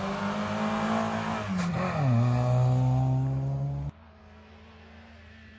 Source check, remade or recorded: recorded